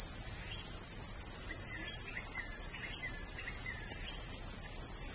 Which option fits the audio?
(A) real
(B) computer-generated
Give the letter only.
A